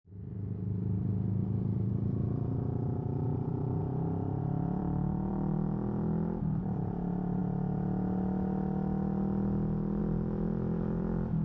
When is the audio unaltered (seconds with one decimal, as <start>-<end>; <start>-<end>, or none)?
1.4-1.9; 3.8-4.4; 7.4-10.0